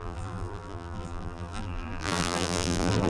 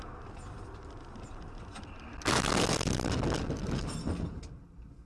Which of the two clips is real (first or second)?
second